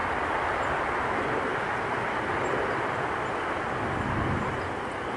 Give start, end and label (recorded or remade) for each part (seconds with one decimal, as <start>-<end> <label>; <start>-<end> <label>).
0.0-0.8 recorded; 0.8-1.5 remade; 1.5-4.6 recorded; 4.6-5.2 remade